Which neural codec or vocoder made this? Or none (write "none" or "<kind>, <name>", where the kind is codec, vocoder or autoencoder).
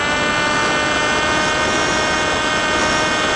none